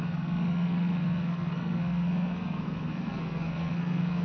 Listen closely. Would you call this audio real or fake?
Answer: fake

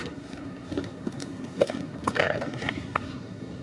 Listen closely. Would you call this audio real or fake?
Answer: fake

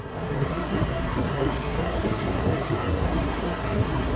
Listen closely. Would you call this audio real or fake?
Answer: fake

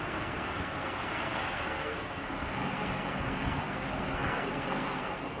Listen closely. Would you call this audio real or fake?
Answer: fake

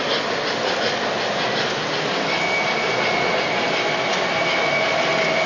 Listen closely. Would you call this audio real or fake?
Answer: real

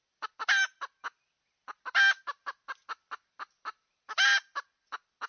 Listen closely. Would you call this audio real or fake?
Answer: real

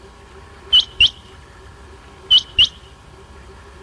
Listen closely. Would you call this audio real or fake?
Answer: real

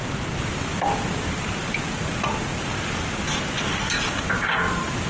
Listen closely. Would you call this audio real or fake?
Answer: real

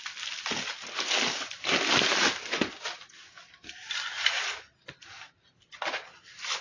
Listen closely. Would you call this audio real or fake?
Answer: real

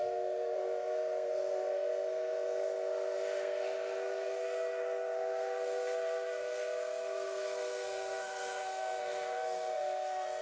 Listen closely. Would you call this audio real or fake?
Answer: fake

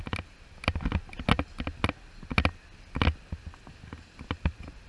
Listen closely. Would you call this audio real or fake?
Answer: real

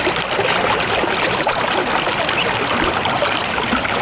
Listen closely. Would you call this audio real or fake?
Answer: real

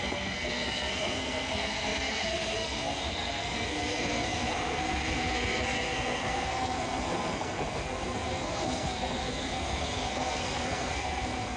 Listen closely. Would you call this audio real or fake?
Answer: fake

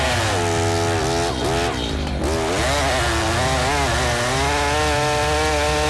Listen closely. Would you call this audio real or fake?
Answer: real